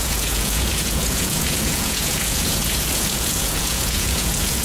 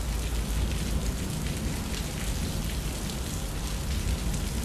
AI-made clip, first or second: first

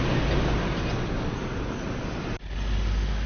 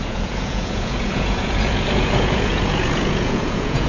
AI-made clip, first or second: second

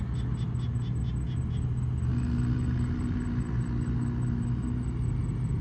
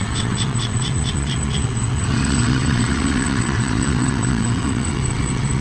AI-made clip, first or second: second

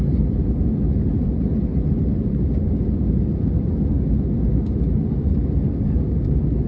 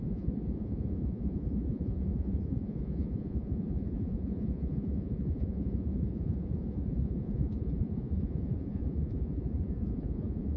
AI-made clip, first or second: second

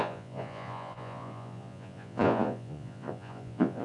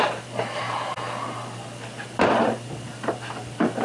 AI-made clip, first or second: first